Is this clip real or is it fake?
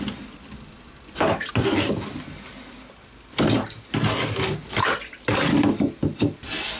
real